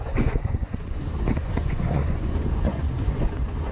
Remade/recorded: remade